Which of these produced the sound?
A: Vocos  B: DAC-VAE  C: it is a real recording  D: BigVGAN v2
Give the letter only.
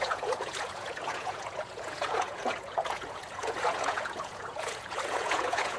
A